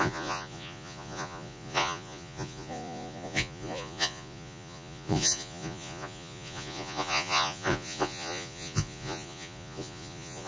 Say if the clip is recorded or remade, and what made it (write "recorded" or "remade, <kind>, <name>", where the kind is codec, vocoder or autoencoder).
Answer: remade, vocoder, Vocos